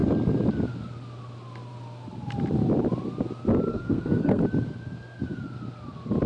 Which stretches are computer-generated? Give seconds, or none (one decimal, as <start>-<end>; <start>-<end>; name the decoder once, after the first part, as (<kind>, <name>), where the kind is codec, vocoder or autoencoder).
3.7-4.4 (codec, SNAC)